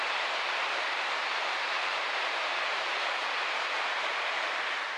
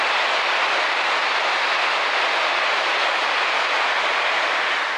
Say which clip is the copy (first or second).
first